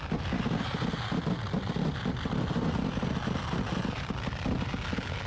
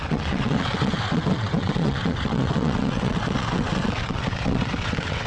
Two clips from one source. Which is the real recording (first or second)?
first